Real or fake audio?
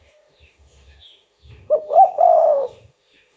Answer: fake